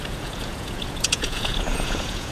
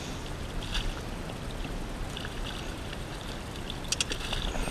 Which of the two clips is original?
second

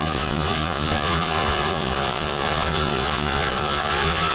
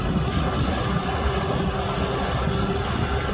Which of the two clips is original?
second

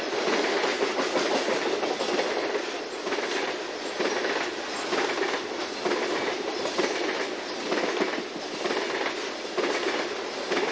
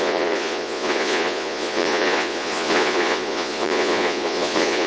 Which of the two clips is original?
first